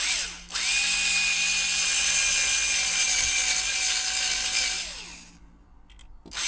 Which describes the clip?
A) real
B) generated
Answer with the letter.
A